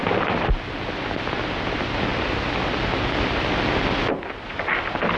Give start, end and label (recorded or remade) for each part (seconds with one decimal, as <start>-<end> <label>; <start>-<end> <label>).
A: 0.0-5.2 recorded